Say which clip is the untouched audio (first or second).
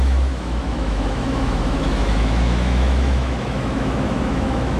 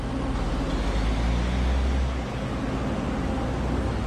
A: second